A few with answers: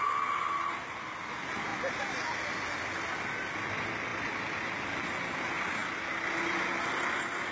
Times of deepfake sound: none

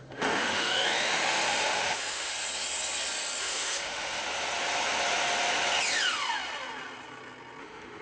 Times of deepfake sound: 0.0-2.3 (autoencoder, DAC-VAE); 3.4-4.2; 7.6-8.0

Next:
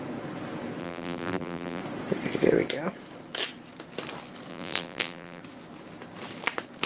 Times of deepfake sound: 0.8-1.8 (vocoder, BigVGAN v2); 4.5-5.4

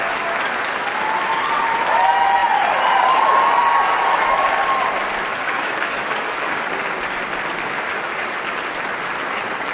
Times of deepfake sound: 5.3-6.7 (codec, DAC); 7.9-8.4

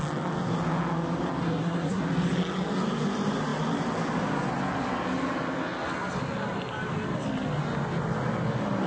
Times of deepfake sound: 1.4-2.0 (codec, SNAC)

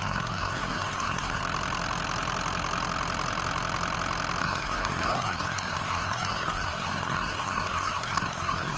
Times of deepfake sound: 0.0-1.4 (codec, SNAC); 4.4-8.8

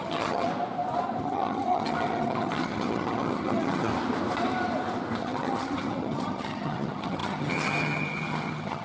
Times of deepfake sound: 0.0-0.5 (vocoder, HiFi-GAN); 1.2-3.9; 5.2-8.8

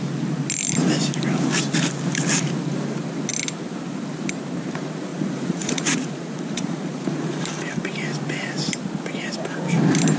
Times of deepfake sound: 5.1-7.4 (vocoder, Vocos)